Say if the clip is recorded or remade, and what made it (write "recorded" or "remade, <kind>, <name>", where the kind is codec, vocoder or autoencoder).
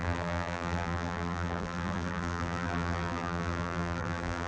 remade, vocoder, BigVGAN v2